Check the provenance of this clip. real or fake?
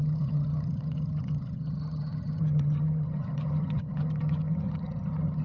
fake